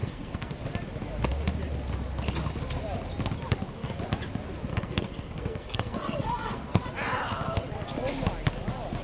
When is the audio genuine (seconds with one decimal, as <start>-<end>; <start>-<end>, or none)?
0.5-4.7; 6.8-9.0